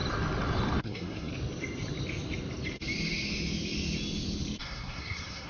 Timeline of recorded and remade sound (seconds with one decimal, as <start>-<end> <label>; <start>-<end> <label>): 0.0-0.8 recorded; 0.8-1.3 remade; 1.3-4.6 recorded; 4.6-5.5 remade